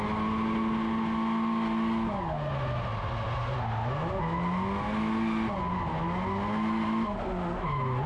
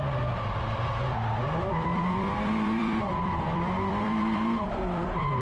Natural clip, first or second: first